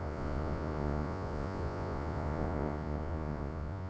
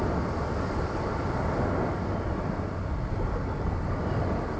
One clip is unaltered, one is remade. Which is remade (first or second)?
first